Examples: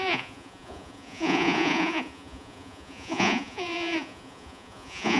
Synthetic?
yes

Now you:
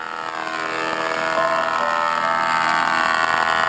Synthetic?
no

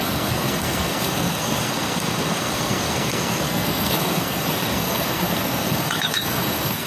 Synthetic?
yes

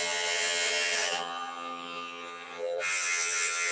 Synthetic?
yes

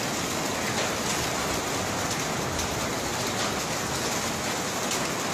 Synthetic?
no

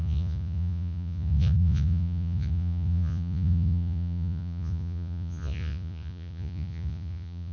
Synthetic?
yes